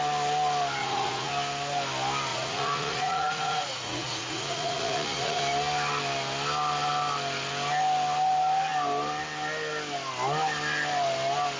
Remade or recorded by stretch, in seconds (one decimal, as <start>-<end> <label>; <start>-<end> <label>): 0.0-0.8 recorded; 0.8-1.3 remade; 1.3-2.3 recorded; 2.3-5.4 remade; 5.4-11.6 recorded